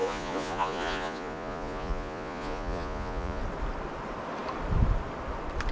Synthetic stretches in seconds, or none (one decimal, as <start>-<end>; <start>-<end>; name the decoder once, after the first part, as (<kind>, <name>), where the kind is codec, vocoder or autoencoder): 0.0-3.4 (vocoder, Vocos)